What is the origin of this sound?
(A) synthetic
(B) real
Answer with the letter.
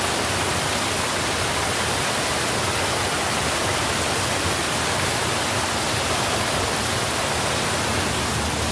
B